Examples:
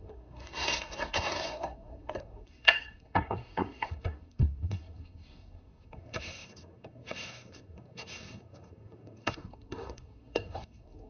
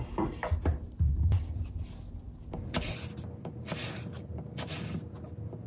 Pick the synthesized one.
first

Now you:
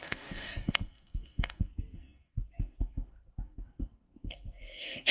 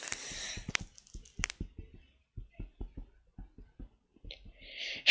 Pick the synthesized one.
first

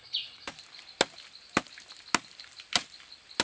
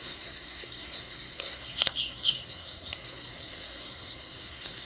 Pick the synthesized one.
second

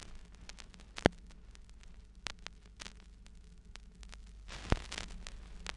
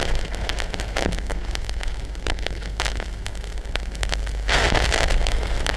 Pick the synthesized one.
second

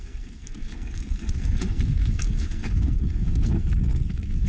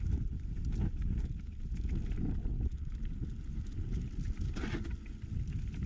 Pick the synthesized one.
first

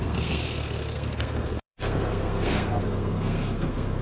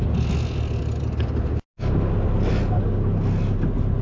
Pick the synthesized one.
first